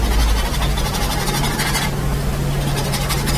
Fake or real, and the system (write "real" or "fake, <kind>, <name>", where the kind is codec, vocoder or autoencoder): real